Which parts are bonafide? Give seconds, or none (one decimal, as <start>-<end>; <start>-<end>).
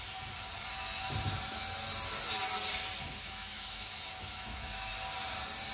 0.0-3.2; 4.9-5.7